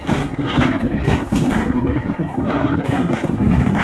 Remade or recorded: remade